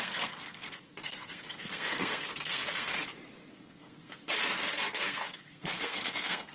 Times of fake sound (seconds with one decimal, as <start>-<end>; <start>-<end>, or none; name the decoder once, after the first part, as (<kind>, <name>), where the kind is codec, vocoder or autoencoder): 0.0-2.9 (codec, SNAC); 3.5-4.2; 4.9-6.5